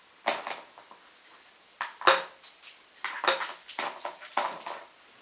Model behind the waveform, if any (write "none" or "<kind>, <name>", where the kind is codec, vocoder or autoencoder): none